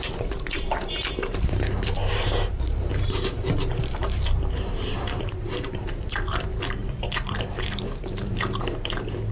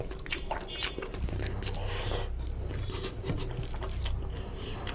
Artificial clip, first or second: first